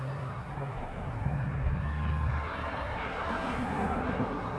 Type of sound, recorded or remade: remade